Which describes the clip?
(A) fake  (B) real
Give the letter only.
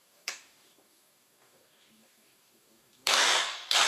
A